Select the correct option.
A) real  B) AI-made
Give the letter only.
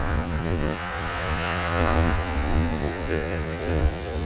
B